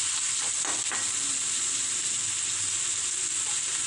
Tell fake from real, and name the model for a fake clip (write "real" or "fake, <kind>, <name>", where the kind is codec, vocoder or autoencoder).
real